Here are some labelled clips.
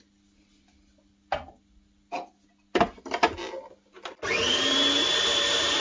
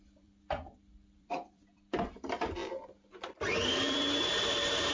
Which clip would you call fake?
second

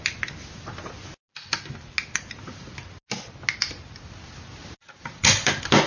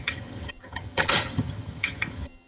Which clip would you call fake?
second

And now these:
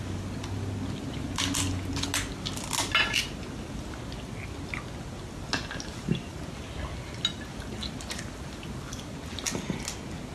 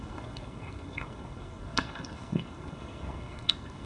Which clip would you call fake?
second